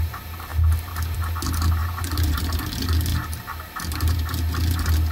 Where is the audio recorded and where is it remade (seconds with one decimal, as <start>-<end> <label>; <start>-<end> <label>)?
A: 0.0-1.8 recorded; 1.8-2.4 remade; 2.4-5.1 recorded